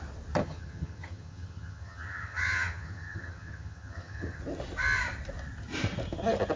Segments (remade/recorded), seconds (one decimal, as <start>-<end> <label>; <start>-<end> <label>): 0.0-0.4 recorded; 0.4-4.4 remade; 4.4-6.6 recorded